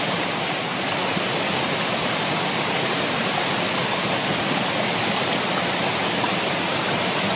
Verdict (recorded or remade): recorded